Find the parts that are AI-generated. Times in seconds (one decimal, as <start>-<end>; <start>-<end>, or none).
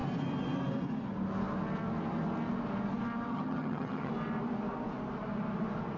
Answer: 3.3-4.1